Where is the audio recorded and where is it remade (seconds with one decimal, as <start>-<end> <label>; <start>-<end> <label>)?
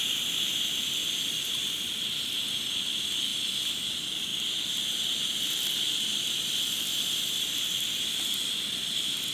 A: 0.0-9.3 recorded